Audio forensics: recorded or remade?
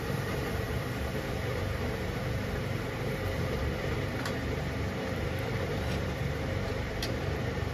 remade